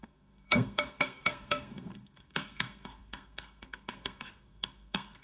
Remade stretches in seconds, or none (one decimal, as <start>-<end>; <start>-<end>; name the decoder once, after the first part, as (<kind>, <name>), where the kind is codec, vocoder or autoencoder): 0.0-5.2 (codec, SNAC)